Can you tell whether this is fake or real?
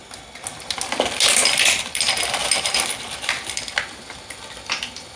real